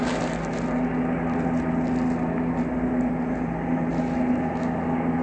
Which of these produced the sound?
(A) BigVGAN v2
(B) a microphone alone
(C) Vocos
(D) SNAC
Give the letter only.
B